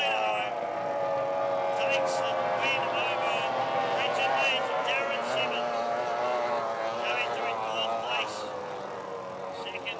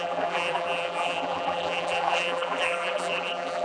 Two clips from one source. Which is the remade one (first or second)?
second